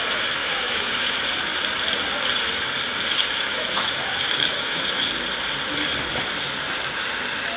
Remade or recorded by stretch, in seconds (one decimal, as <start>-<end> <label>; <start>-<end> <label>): 0.0-0.4 recorded; 0.4-1.1 remade; 1.1-3.1 recorded; 3.1-5.1 remade; 5.1-7.6 recorded